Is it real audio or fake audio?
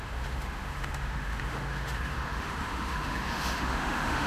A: fake